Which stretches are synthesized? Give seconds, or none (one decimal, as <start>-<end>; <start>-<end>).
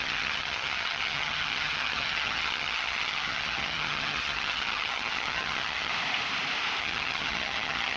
0.0-5.9; 6.8-8.0